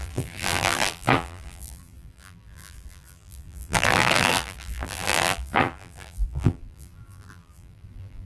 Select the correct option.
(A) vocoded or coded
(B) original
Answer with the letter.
A